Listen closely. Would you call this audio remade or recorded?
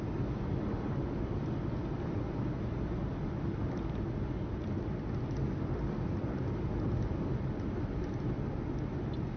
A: recorded